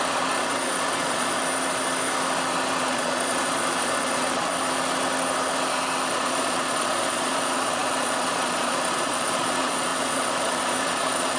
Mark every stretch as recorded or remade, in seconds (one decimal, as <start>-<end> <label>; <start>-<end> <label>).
0.0-1.4 remade; 1.4-2.8 recorded; 2.8-4.5 remade; 4.5-6.1 recorded; 6.1-11.4 remade